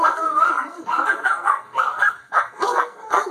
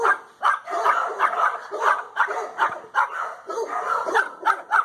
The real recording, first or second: second